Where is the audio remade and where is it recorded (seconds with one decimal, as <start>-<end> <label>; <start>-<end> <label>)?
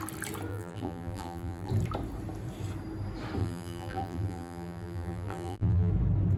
0.0-0.5 recorded; 0.5-1.7 remade; 1.7-3.4 recorded; 3.4-5.9 remade; 5.9-6.4 recorded